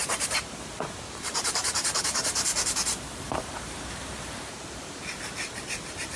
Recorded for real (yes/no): no